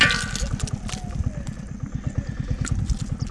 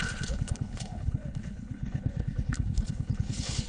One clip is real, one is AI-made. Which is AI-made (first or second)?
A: second